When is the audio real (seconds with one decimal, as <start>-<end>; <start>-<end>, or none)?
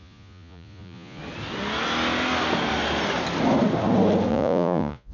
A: 1.2-4.3